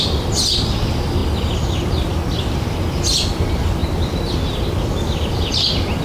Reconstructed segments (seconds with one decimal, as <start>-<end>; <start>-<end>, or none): none